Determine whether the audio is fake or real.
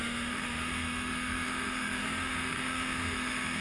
fake